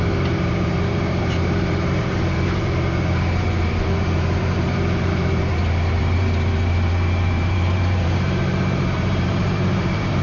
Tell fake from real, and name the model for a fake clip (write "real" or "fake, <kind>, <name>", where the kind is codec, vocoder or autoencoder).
fake, vocoder, BigVGAN v2